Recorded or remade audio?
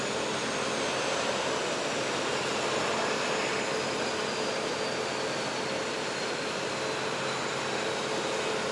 recorded